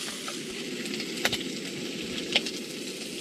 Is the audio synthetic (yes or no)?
no